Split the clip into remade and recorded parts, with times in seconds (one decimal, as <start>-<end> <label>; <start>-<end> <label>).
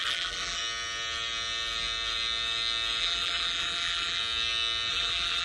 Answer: 0.0-0.6 remade; 0.6-3.0 recorded; 3.0-4.2 remade; 4.2-4.9 recorded; 4.9-5.4 remade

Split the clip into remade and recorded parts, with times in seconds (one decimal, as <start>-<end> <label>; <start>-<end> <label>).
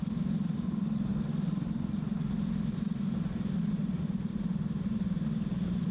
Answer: 0.0-5.9 recorded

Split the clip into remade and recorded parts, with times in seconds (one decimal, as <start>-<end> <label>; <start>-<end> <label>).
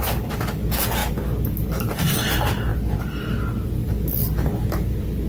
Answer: 0.0-5.3 recorded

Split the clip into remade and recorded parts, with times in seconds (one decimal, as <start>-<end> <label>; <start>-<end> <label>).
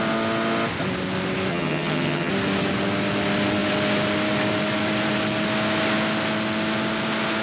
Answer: 0.0-1.5 recorded; 1.5-2.3 remade; 2.3-7.4 recorded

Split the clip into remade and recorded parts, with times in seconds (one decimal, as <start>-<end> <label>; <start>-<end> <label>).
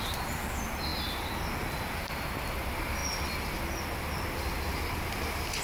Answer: 0.0-5.6 recorded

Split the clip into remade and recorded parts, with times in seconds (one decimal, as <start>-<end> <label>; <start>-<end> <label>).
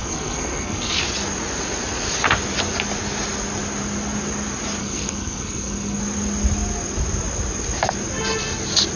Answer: 0.0-1.0 remade; 1.0-4.8 recorded; 4.8-6.0 remade; 6.0-9.0 recorded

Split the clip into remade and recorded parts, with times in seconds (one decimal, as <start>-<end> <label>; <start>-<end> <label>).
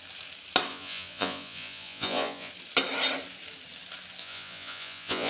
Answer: 0.0-0.7 recorded; 0.7-2.5 remade; 2.5-4.2 recorded; 4.2-5.3 remade